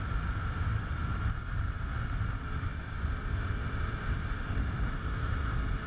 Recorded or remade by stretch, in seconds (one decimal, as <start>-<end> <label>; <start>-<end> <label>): 0.0-5.9 recorded